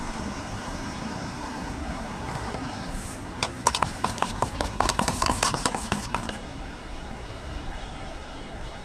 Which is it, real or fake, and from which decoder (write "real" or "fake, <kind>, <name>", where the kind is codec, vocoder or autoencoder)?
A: fake, codec, SNAC